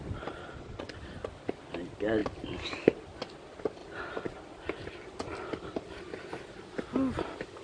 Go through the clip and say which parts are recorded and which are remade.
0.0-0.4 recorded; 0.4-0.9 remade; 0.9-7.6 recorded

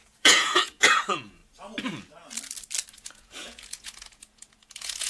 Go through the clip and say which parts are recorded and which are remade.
0.0-1.4 remade; 1.4-2.9 recorded; 2.9-5.1 remade

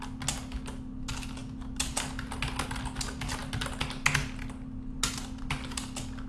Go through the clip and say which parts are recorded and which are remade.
0.0-6.3 recorded

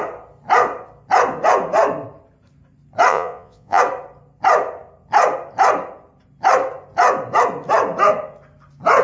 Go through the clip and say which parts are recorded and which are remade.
0.0-3.1 recorded; 3.1-3.8 remade; 3.8-9.0 recorded